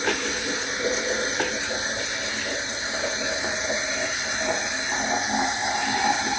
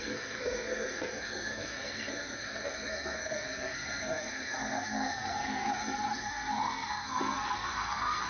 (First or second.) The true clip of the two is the first